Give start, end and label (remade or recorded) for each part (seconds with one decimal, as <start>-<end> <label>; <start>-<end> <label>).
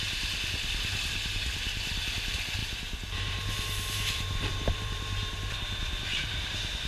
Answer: 0.0-2.6 recorded; 2.6-6.9 remade